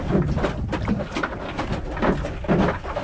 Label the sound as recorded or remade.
recorded